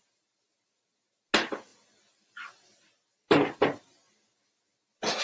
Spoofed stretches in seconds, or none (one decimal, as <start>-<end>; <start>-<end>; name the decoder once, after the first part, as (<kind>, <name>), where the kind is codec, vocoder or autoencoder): none